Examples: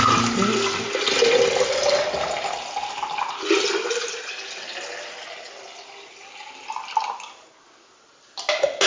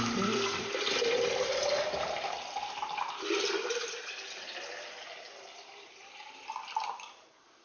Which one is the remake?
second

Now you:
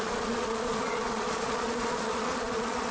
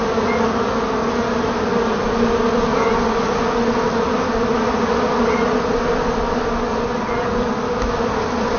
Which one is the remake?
first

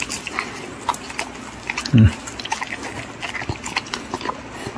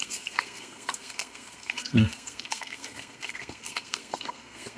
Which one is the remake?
second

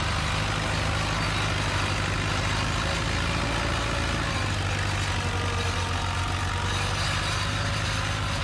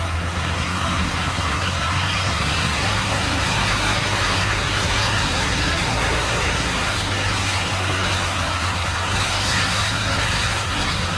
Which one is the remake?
second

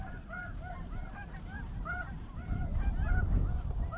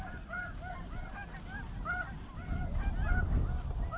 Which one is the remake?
first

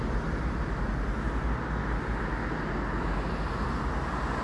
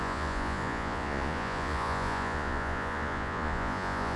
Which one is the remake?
second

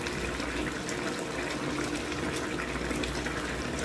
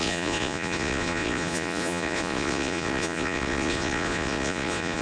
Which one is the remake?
second